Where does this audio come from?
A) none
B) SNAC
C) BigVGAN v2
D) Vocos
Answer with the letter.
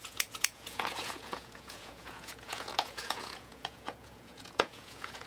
D